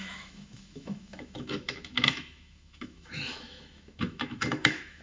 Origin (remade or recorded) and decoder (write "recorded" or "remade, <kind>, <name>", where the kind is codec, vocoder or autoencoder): remade, autoencoder, DAC-VAE